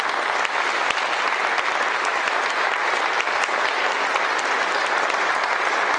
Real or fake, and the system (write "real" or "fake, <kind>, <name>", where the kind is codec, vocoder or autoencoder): real